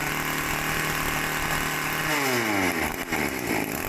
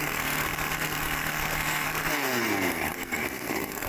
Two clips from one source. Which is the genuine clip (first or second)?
first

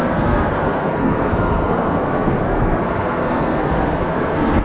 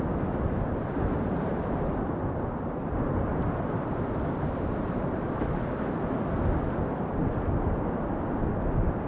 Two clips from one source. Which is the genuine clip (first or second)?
second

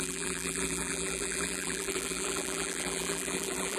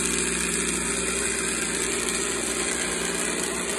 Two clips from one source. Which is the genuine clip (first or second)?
second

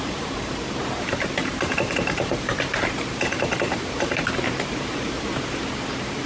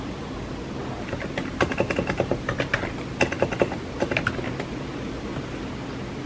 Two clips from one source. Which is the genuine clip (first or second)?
second